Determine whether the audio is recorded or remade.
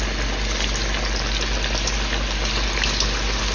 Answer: recorded